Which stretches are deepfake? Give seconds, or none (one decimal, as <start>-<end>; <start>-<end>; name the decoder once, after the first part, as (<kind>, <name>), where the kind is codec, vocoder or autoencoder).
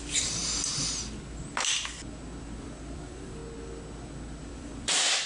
0.0-0.4 (vocoder, BigVGAN v2); 2.4-3.4; 4.4-5.3